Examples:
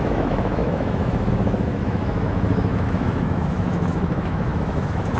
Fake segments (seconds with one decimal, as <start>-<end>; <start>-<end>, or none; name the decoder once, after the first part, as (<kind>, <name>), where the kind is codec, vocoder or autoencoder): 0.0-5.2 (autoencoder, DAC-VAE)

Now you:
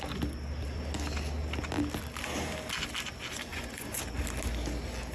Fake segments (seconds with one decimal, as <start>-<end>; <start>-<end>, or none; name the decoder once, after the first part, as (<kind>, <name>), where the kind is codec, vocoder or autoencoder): 3.5-4.0 (vocoder, Vocos)

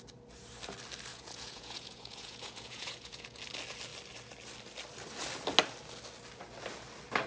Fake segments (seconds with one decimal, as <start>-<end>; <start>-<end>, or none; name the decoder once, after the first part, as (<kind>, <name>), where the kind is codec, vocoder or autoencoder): 1.1-3.4 (vocoder, Vocos)

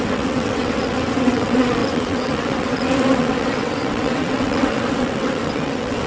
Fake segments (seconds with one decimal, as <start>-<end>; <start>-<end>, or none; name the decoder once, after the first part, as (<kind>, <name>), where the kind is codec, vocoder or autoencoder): 0.0-6.1 (vocoder, WaveNeXt)

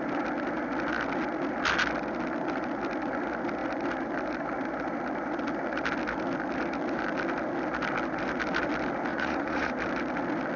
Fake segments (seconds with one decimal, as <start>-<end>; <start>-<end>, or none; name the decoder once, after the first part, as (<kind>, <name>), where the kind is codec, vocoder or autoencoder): 9.1-9.7 (vocoder, Vocos)

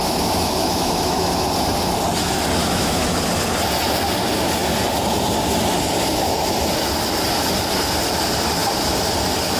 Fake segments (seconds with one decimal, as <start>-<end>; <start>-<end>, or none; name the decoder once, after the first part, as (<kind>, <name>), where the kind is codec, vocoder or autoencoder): 0.0-1.4 (autoencoder, DAC-VAE); 2.6-3.2

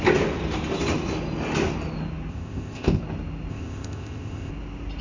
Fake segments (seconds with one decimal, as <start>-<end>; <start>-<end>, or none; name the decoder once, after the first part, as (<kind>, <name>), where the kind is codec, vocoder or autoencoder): 2.3-3.0 (codec, ZipCodec); 3.5-4.5